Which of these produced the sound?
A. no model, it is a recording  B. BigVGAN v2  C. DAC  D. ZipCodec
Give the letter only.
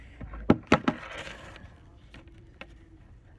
A